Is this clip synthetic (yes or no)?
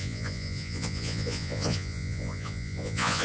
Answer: yes